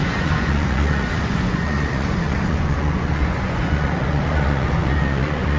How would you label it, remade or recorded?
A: remade